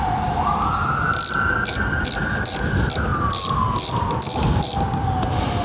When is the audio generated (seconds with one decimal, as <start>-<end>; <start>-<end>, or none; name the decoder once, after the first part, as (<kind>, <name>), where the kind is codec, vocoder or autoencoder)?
none